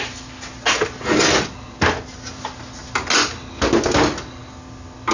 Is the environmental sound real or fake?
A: real